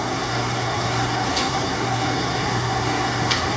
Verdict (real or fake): fake